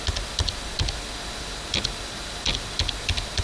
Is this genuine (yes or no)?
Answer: yes